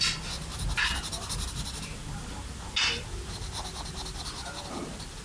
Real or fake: real